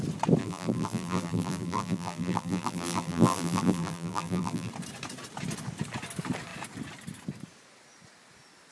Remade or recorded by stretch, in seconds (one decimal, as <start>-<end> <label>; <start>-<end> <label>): 0.0-0.4 recorded; 0.4-4.7 remade; 4.7-8.7 recorded